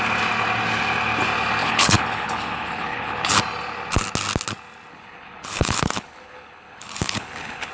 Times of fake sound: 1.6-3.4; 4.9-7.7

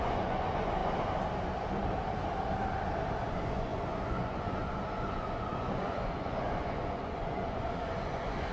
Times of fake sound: 0.0-0.8; 3.3-8.5